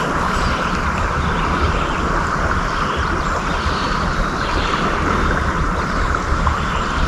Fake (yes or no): no